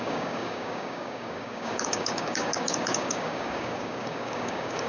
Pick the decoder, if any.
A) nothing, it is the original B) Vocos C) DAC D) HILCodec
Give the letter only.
C